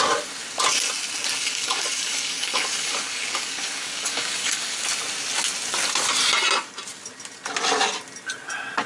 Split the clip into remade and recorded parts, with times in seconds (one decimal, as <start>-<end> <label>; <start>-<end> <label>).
0.0-1.4 recorded; 1.4-4.8 remade; 4.8-8.9 recorded